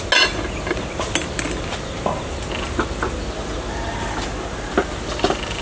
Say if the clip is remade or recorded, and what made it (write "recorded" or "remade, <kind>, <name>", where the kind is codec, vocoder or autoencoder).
recorded